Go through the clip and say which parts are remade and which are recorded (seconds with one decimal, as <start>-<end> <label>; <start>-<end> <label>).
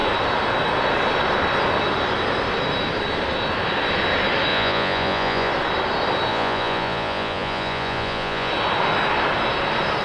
0.0-4.5 recorded; 4.5-5.5 remade; 5.5-6.3 recorded; 6.3-8.5 remade; 8.5-10.0 recorded